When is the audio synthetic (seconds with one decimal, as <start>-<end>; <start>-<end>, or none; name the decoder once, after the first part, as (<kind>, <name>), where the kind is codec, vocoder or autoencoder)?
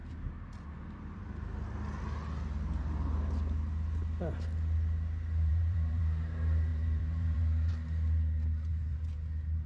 5.5-6.0 (vocoder, BigVGAN v2); 6.7-7.7